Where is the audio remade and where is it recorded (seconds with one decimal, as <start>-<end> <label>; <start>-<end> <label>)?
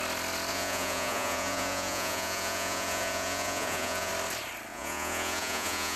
0.0-0.5 recorded; 0.5-4.1 remade; 4.1-4.7 recorded; 4.7-6.0 remade